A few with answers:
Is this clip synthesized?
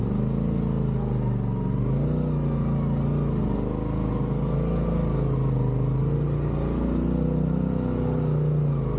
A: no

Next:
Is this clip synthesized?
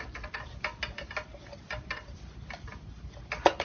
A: no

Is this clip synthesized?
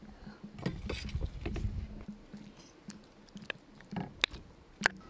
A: no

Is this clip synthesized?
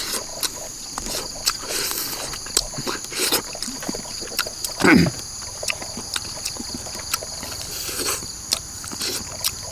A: no